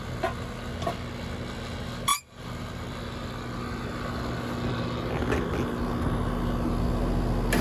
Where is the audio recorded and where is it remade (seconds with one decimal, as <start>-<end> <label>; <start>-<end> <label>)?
0.0-7.6 recorded